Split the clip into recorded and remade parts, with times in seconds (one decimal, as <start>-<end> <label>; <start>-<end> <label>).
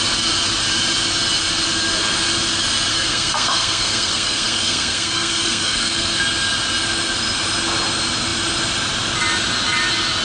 0.0-2.9 recorded; 2.9-6.2 remade; 6.2-10.2 recorded